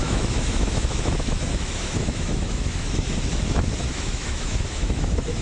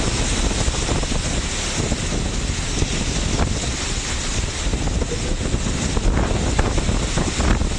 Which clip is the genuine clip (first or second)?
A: second